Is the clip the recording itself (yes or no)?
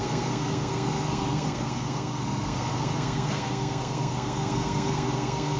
no